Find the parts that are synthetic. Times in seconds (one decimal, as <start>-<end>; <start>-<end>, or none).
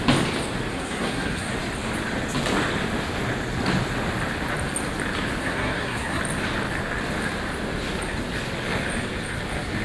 0.7-1.5; 5.4-6.2